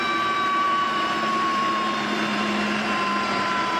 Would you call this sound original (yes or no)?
no